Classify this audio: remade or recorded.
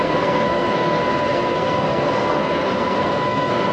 remade